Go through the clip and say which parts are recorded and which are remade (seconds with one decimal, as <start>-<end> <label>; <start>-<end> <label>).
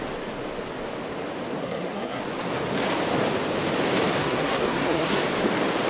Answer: 0.0-1.6 recorded; 1.6-2.2 remade; 2.2-4.2 recorded; 4.2-5.2 remade; 5.2-5.9 recorded